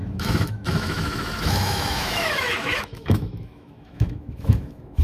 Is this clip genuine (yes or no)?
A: no